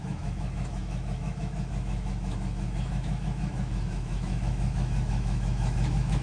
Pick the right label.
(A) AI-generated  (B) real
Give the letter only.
A